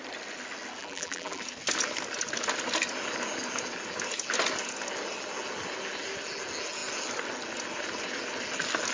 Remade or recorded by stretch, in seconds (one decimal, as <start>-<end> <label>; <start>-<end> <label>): 0.0-0.8 recorded; 0.8-1.4 remade; 1.4-8.9 recorded